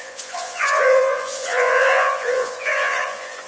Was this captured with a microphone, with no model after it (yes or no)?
no